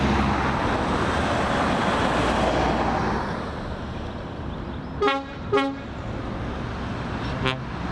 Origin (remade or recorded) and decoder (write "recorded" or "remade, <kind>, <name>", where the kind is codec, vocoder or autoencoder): recorded